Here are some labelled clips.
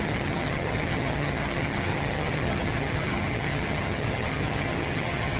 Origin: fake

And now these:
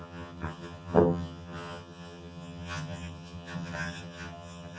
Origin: fake